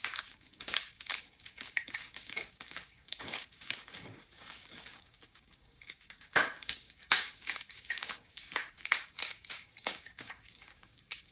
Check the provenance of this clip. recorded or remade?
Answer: remade